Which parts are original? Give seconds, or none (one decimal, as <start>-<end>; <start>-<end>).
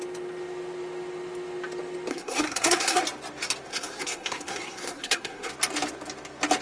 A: 0.0-2.1; 3.0-3.7; 5.5-6.6